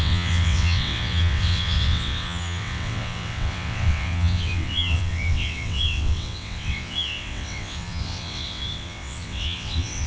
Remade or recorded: remade